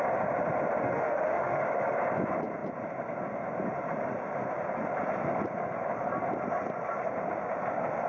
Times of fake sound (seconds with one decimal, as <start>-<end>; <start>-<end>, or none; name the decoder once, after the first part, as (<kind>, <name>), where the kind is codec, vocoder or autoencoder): 0.8-1.6 (autoencoder, DAC-VAE)